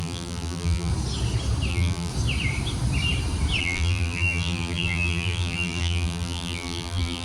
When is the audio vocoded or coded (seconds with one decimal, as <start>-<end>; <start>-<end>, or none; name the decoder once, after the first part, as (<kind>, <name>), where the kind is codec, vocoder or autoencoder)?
0.0-0.9 (vocoder, BigVGAN v2); 1.7-2.1; 3.6-7.2